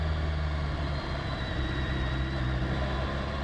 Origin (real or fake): real